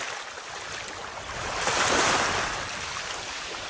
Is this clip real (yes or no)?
yes